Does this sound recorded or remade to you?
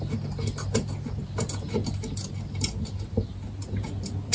recorded